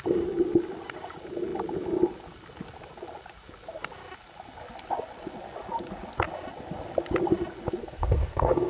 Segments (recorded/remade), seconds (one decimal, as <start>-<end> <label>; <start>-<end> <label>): 0.0-7.8 recorded; 7.8-8.7 remade